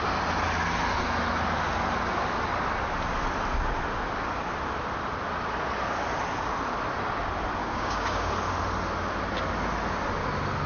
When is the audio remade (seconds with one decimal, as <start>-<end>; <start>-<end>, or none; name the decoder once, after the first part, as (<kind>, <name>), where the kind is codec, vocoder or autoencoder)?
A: 7.6-8.3 (codec, DAC)